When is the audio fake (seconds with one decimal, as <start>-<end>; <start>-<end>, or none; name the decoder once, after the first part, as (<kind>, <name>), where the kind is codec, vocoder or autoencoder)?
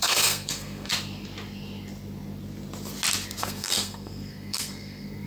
0.0-0.9 (codec, SNAC); 3.4-5.3